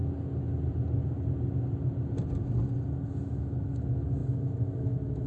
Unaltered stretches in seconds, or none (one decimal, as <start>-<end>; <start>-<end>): 0.0-3.2